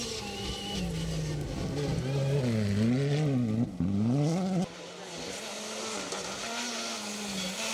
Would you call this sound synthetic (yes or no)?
no